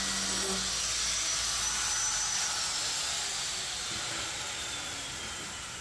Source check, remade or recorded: recorded